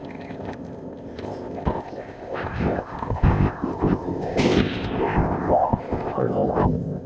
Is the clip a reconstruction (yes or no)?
yes